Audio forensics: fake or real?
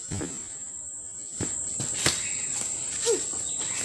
real